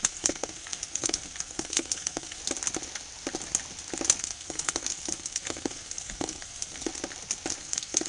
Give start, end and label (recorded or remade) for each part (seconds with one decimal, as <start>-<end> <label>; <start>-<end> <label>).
0.0-2.4 remade; 2.4-4.2 recorded; 4.2-6.9 remade; 6.9-7.6 recorded; 7.6-8.1 remade